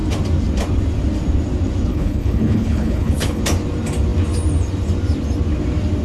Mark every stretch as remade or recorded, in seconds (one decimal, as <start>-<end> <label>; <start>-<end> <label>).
0.0-1.9 recorded; 1.9-3.4 remade; 3.4-6.0 recorded